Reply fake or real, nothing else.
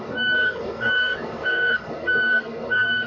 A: fake